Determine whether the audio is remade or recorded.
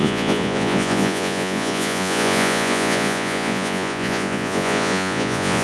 remade